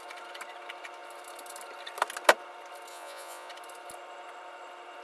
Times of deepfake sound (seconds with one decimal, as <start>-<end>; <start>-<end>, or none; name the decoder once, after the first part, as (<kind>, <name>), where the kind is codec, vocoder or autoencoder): 2.9-3.5 (vocoder, Vocos)

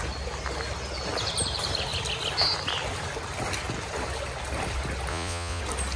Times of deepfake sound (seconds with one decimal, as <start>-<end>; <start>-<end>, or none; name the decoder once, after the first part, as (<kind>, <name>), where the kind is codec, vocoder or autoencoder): 5.1-5.6 (vocoder, Vocos)